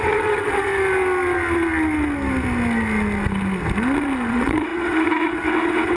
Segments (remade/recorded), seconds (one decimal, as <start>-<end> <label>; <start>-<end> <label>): 0.0-0.7 remade; 0.7-4.3 recorded; 4.3-6.0 remade